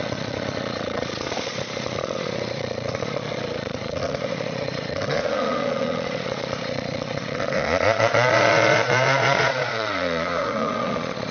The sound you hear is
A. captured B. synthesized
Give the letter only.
B